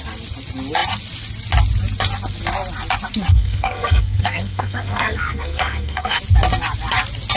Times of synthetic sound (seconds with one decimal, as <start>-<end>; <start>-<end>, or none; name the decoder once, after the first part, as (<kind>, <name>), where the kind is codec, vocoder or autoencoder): 3.3-6.2 (codec, SNAC)